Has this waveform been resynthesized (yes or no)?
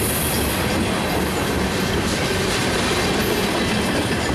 yes